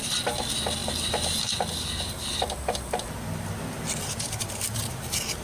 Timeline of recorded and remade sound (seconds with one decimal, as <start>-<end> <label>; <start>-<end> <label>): 0.0-5.4 recorded